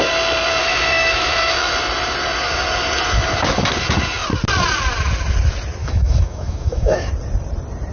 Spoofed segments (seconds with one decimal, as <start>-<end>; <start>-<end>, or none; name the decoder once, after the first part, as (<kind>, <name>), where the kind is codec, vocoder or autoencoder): 0.6-1.7 (autoencoder, DAC-VAE); 5.8-7.1